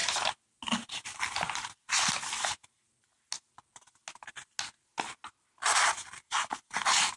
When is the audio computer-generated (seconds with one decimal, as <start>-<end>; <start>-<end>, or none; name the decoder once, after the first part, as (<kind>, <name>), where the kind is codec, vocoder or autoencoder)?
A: none